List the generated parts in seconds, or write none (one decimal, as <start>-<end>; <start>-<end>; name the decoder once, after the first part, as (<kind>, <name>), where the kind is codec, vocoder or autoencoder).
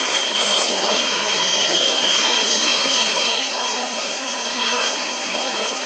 0.0-5.9 (codec, SNAC)